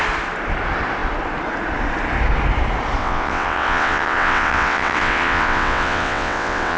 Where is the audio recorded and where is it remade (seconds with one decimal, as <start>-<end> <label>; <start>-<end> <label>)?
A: 0.0-3.0 recorded; 3.0-6.8 remade